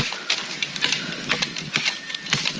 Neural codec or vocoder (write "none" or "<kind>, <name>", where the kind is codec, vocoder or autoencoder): none